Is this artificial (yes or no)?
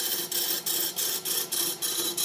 no